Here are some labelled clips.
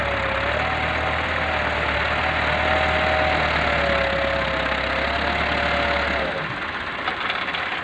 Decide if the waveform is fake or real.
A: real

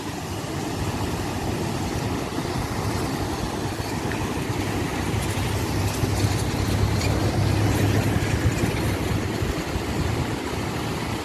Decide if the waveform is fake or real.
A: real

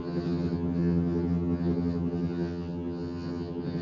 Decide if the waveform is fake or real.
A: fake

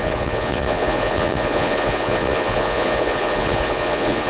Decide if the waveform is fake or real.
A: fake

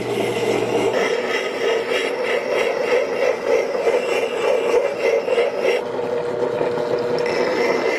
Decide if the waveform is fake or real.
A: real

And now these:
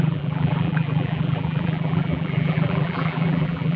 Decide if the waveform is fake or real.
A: fake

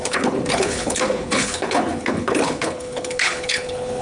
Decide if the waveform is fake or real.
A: fake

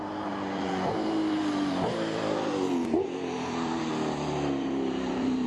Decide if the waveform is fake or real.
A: fake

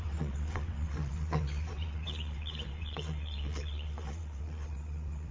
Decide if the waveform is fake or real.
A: fake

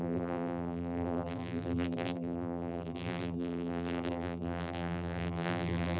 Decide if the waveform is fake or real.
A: fake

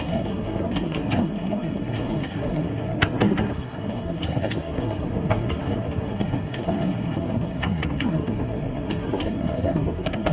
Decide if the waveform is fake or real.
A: fake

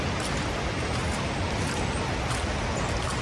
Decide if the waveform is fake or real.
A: real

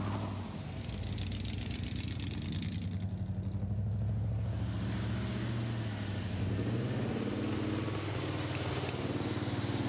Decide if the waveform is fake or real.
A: real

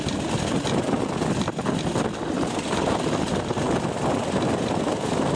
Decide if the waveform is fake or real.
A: real